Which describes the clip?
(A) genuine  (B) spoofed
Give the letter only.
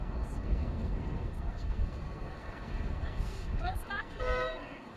B